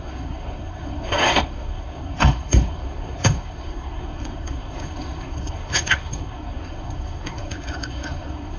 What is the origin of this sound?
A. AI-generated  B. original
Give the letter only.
A